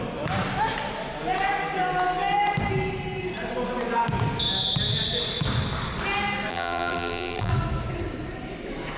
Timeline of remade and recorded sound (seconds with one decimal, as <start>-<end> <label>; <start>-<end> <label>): 0.0-6.5 recorded; 6.5-7.5 remade; 7.5-9.0 recorded